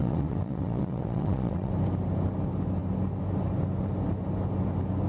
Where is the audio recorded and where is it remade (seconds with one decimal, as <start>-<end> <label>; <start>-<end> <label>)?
0.0-1.7 remade; 1.7-5.1 recorded